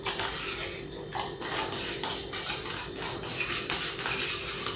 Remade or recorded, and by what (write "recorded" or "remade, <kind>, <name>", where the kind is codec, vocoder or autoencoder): recorded